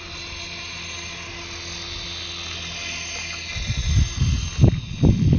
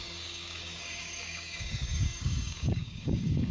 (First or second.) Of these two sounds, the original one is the first